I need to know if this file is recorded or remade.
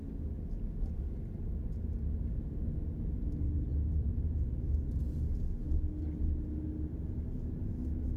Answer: recorded